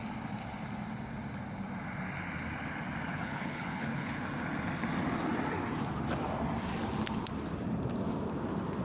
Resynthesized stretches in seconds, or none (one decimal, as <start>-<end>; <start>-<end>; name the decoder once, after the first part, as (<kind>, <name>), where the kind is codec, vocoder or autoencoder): 3.1-4.2 (codec, HILCodec)